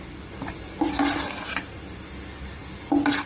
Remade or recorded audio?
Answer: recorded